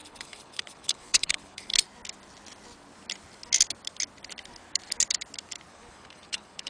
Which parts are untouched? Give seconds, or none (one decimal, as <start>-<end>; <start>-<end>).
1.7-5.7